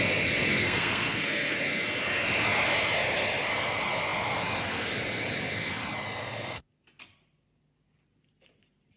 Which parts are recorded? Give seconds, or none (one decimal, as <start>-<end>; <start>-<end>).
0.0-0.6; 1.6-6.2; 6.7-9.0